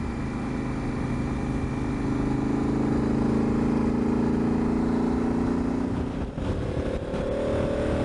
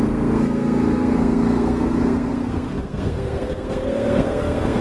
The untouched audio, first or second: first